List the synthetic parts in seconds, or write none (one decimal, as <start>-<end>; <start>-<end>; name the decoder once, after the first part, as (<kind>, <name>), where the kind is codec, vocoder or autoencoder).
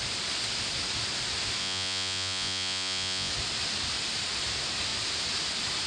1.6-3.3 (vocoder, Vocos)